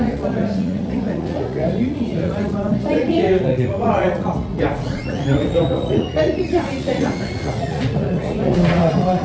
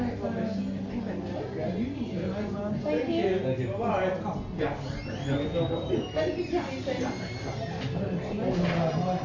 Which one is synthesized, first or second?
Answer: first